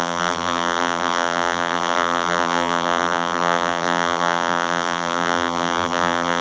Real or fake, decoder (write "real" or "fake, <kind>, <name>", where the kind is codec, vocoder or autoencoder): fake, vocoder, BigVGAN v2